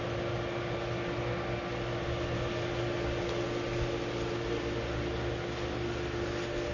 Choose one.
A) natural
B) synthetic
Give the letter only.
A